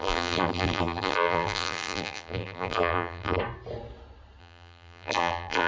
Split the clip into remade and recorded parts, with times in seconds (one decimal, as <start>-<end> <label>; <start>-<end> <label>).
0.0-3.4 remade; 3.4-4.4 recorded; 4.4-5.7 remade